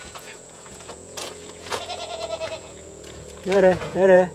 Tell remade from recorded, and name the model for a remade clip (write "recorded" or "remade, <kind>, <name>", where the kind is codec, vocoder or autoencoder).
remade, vocoder, Vocos